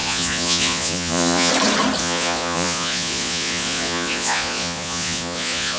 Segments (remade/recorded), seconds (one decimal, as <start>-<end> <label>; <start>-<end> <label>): 0.0-1.5 remade; 1.5-2.0 recorded; 2.0-5.8 remade